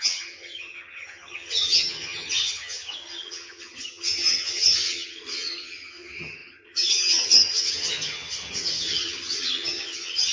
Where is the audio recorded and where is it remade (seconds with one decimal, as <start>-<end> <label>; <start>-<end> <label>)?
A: 0.0-10.3 remade